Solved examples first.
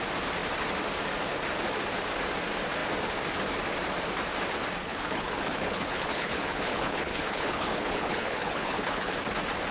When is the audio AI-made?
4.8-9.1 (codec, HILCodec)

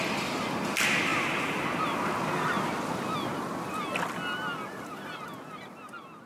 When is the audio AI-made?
none

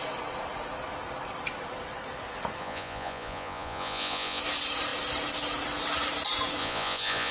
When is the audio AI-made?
2.6-4.4 (vocoder, Vocos); 6.6-7.3